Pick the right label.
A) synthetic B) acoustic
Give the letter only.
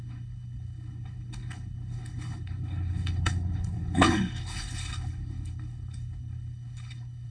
A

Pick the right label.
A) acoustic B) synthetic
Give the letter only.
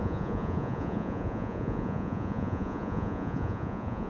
B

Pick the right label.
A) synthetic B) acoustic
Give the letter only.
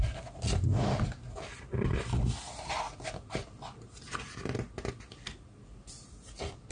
B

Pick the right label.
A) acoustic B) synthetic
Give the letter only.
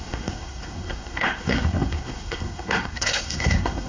B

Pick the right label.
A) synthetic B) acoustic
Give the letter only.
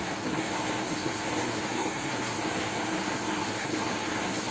A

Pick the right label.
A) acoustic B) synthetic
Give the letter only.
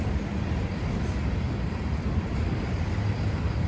A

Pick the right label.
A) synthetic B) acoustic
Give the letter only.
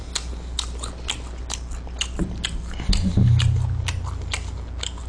B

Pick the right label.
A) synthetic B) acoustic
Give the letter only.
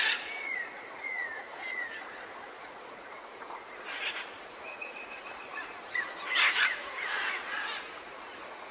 A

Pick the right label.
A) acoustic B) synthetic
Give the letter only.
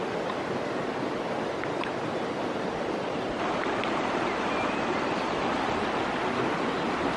A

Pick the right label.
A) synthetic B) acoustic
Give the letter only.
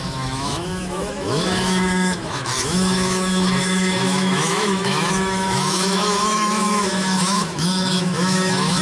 A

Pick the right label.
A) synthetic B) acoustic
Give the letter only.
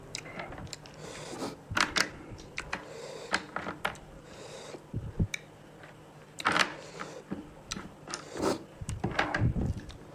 B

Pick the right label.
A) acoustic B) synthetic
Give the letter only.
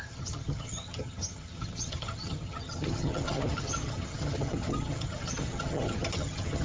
B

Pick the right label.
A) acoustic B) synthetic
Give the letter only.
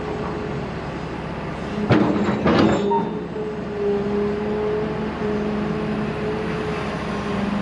A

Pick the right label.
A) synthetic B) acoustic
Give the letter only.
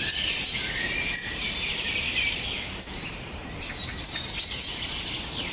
B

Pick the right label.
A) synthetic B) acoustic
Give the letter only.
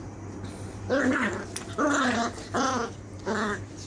B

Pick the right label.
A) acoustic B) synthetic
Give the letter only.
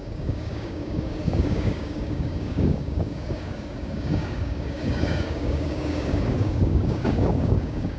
B